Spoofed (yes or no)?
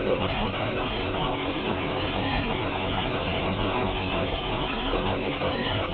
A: yes